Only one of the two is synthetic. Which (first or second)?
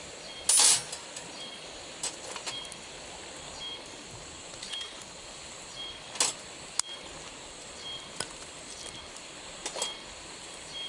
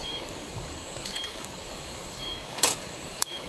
second